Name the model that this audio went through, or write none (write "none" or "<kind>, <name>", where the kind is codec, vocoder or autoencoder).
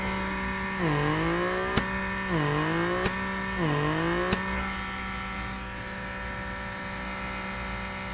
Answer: none